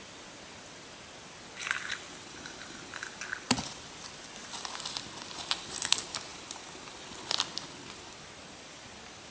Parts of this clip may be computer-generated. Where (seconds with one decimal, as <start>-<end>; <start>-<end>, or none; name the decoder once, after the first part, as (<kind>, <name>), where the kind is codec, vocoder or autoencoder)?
none